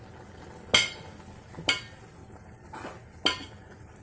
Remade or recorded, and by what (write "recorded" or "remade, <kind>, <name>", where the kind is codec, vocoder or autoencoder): recorded